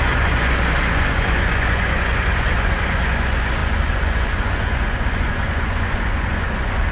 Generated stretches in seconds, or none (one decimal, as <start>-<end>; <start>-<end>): 0.0-6.9